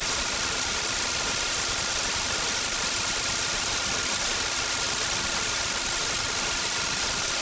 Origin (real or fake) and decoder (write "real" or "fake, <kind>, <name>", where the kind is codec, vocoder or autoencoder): fake, vocoder, BigVGAN v2